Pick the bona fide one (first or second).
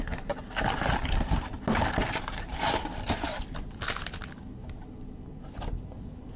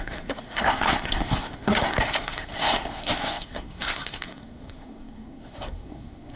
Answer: first